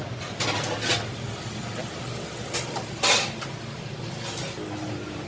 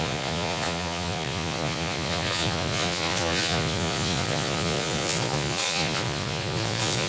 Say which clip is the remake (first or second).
second